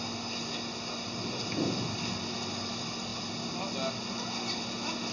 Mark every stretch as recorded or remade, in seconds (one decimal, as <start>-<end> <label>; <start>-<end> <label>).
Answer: 0.0-5.1 recorded